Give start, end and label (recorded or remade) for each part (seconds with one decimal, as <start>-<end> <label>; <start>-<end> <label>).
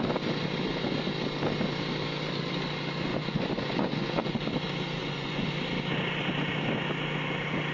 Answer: 0.0-3.1 recorded; 3.1-4.3 remade; 4.3-5.0 recorded; 5.0-5.5 remade; 5.5-7.7 recorded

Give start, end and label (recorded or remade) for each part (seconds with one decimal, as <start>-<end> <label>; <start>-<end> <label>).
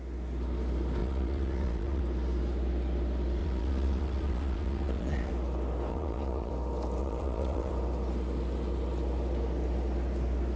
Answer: 0.0-1.0 recorded; 1.0-2.0 remade; 2.0-3.4 recorded; 3.4-5.3 remade; 5.3-5.9 recorded; 5.9-6.5 remade; 6.5-7.0 recorded; 7.0-7.7 remade; 7.7-10.6 recorded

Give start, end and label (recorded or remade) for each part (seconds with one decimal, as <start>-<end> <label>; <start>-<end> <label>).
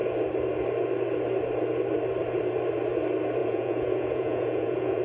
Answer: 0.0-3.4 recorded; 3.4-5.0 remade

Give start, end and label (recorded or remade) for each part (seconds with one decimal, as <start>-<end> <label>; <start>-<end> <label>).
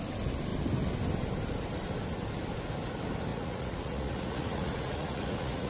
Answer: 0.0-3.3 recorded; 3.3-5.7 remade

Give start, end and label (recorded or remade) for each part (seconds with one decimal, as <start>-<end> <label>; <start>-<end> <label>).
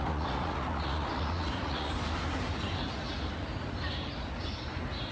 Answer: 0.0-1.9 remade; 1.9-5.1 recorded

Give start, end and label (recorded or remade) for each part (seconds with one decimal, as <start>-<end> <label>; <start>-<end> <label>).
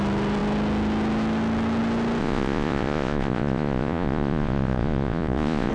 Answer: 0.0-2.2 recorded; 2.2-5.7 remade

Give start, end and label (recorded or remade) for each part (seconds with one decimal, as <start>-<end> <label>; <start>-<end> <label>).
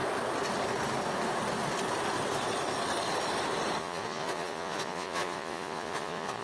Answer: 0.0-3.8 recorded; 3.8-6.4 remade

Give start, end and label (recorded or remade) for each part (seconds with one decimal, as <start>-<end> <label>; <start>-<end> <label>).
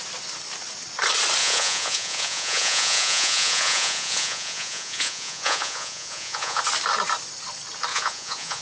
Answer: 0.0-1.4 recorded; 1.4-6.6 remade; 6.6-7.9 recorded; 7.9-8.6 remade